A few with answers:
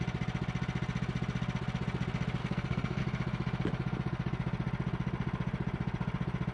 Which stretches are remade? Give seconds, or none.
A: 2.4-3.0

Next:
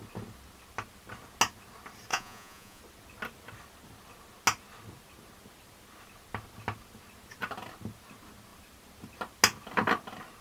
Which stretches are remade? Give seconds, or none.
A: 2.1-2.8

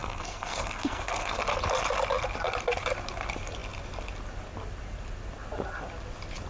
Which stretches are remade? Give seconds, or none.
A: 0.0-1.4

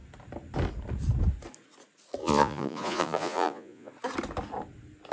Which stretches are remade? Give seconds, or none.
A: 2.2-3.9

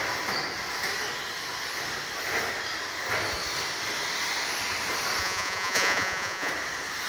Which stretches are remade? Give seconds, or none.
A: 5.2-6.5

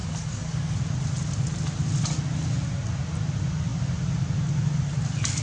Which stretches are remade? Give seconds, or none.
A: 0.0-0.8